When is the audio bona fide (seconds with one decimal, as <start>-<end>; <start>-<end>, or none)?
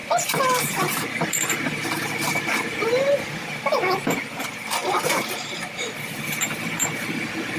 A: none